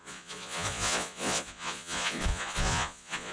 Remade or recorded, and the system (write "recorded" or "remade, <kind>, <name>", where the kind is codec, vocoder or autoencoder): remade, vocoder, Vocos